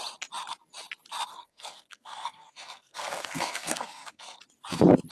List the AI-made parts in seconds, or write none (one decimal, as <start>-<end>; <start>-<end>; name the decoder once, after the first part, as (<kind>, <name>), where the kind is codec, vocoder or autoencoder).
1.3-4.4 (codec, SNAC)